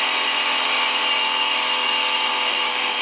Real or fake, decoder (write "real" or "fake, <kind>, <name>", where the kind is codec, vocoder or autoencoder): fake, codec, DAC